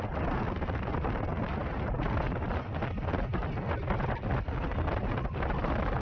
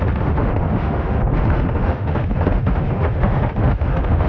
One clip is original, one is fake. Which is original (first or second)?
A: first